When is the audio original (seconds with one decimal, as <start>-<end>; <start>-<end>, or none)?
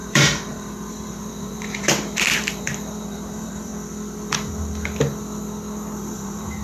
3.7-6.0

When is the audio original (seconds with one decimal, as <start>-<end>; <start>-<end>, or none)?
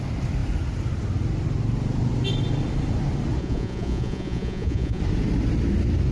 0.0-3.4; 5.0-6.1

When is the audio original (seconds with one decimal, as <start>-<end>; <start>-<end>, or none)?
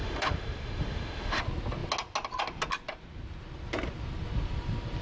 1.4-5.0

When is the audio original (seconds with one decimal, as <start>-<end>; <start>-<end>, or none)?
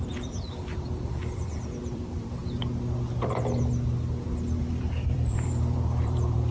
1.2-1.9; 2.4-4.6